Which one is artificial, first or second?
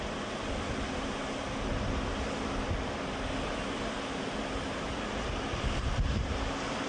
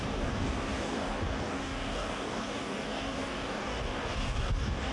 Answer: second